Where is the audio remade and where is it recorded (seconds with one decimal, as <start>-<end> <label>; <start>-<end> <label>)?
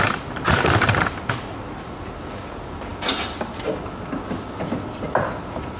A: 0.0-5.8 recorded